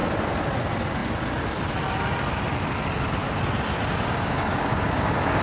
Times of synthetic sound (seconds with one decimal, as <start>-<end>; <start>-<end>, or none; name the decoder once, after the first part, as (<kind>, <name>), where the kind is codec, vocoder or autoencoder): 3.8-5.4 (codec, DAC)